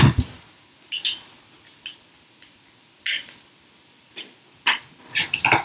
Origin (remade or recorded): recorded